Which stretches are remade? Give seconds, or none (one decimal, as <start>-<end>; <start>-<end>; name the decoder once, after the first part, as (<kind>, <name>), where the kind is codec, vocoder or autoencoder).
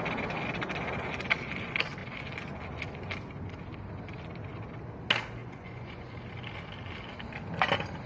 5.4-6.1 (vocoder, Vocos)